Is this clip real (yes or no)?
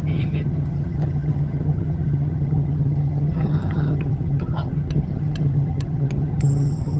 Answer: no